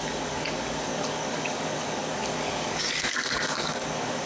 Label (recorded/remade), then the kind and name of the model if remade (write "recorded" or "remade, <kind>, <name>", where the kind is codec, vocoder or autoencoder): remade, codec, DAC